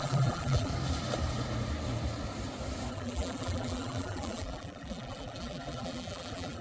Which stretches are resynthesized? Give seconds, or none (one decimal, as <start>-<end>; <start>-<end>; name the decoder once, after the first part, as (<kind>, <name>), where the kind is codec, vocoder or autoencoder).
0.0-0.7 (vocoder, BigVGAN v2); 2.9-6.6